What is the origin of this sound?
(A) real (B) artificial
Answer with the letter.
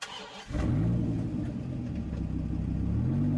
A